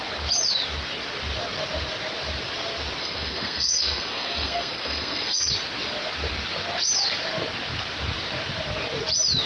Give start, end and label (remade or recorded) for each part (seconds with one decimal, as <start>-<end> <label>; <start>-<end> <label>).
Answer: 0.0-3.0 recorded; 3.0-5.5 remade; 5.5-9.5 recorded